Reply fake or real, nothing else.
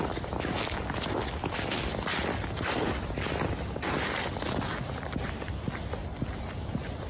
real